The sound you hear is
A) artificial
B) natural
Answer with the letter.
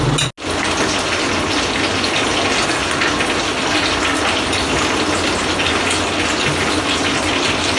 B